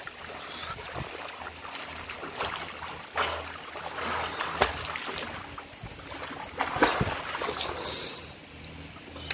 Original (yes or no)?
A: yes